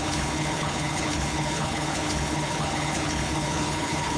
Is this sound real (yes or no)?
no